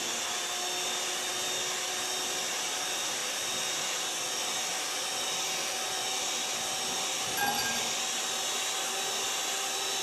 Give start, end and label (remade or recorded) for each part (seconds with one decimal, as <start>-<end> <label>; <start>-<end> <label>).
0.0-10.0 recorded